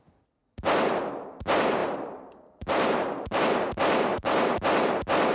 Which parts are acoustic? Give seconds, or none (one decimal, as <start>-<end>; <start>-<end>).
0.0-1.8; 3.4-4.1; 4.6-5.3